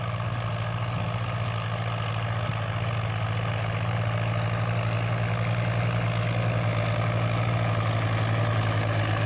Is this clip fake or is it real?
real